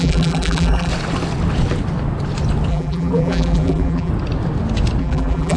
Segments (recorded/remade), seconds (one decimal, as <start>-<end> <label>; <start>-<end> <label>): 0.0-0.9 remade; 0.9-2.7 recorded; 2.7-4.1 remade; 4.1-5.0 recorded; 5.0-5.6 remade